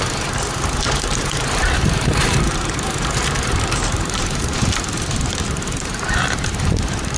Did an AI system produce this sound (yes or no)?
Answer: yes